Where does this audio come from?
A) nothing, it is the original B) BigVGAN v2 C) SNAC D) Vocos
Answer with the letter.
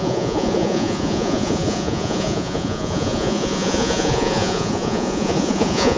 D